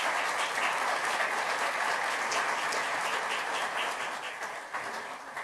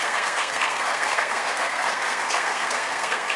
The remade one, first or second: second